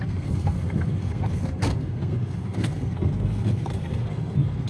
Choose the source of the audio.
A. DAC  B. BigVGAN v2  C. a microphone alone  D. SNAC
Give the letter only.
D